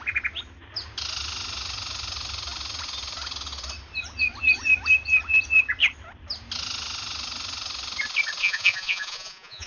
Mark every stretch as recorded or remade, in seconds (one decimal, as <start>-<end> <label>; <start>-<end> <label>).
0.0-8.4 recorded; 8.4-9.7 remade